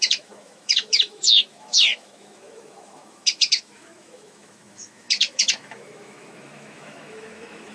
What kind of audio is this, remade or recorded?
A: remade